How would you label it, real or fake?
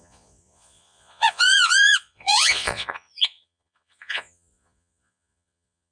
fake